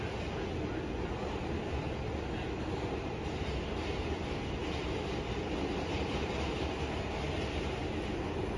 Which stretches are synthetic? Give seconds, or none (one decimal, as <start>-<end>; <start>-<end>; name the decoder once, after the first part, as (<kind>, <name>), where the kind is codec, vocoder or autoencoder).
none